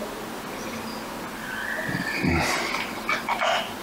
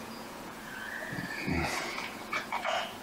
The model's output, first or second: second